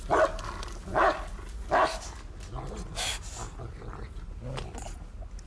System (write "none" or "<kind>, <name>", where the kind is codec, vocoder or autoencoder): none